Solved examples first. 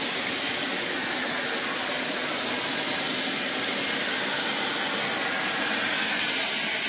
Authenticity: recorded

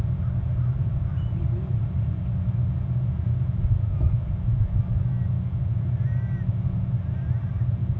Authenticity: recorded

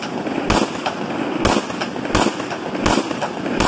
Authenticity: recorded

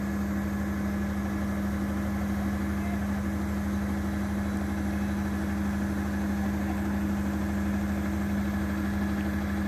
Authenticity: recorded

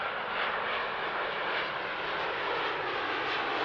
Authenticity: recorded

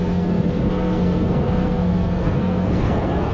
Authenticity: remade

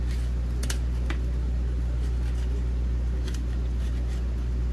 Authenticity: recorded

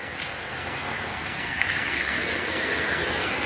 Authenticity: remade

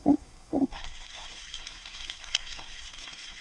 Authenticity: remade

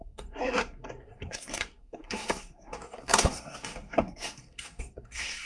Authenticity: remade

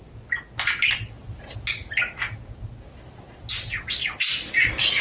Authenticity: recorded